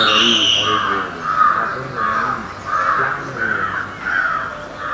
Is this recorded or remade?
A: recorded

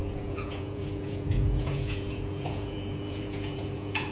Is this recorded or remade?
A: remade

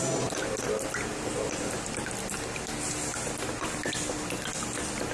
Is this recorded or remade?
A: recorded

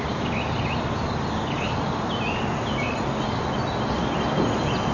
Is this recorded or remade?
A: recorded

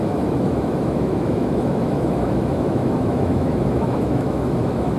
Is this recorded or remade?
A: remade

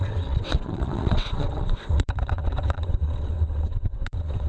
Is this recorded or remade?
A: remade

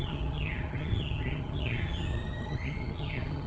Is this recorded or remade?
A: remade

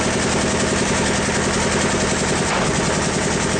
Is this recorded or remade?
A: recorded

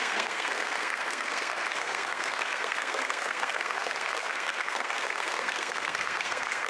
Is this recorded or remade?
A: remade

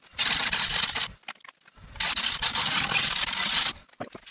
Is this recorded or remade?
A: recorded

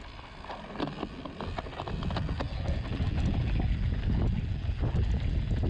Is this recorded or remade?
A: recorded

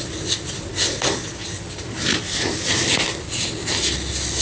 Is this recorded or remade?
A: recorded